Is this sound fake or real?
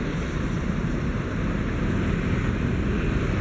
real